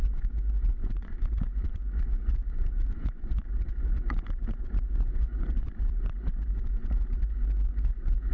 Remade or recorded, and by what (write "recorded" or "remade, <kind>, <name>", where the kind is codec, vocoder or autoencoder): remade, vocoder, Vocos